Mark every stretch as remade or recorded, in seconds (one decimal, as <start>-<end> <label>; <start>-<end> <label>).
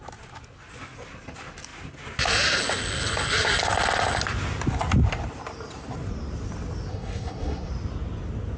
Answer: 0.0-6.9 recorded; 6.9-7.7 remade; 7.7-8.6 recorded